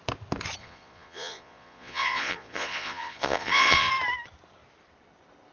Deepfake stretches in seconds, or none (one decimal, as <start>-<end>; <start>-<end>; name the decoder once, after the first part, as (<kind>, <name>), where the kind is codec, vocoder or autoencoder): 0.6-3.9 (vocoder, Vocos)